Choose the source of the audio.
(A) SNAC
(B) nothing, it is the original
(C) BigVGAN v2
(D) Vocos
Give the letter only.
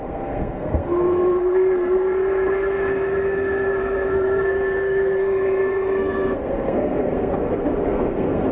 A